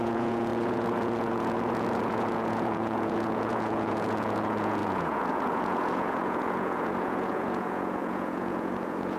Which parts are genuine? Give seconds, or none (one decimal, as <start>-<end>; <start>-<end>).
none